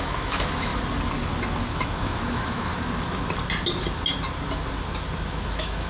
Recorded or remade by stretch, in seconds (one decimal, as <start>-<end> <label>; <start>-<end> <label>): 0.0-0.7 remade; 0.7-1.6 recorded; 1.6-2.7 remade; 2.7-5.3 recorded; 5.3-5.9 remade